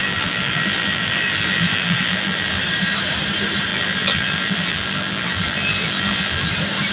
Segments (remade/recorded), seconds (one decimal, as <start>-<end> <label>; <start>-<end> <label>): 0.0-2.6 remade; 2.6-3.7 recorded; 3.7-6.5 remade; 6.5-6.9 recorded